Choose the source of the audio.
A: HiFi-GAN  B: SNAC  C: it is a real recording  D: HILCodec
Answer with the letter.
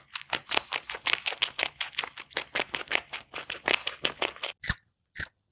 C